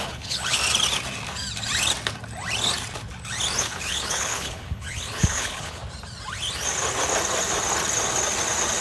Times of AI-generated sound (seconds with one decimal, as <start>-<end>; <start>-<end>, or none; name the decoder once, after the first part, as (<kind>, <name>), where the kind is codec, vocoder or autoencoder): 0.0-0.6 (codec, HILCodec); 3.6-5.8